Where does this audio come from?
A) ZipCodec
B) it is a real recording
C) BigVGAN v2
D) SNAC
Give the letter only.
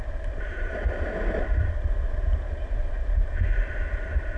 C